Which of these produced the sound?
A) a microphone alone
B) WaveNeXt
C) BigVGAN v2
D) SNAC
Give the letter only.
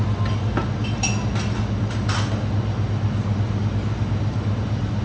A